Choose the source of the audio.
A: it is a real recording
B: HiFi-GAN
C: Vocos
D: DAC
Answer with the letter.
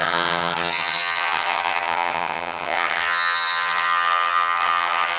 B